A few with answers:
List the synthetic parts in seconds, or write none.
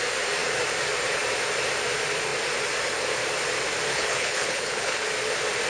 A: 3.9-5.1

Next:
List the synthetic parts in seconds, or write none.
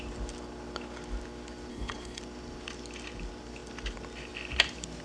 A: 1.7-2.2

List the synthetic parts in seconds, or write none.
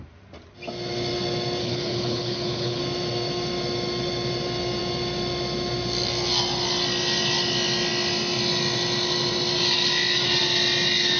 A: 1.6-2.8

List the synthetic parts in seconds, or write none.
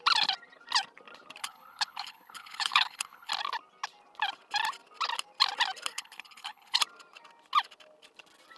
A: 1.4-3.3; 5.9-6.8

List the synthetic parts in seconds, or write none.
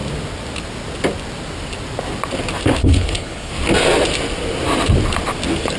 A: 2.8-3.5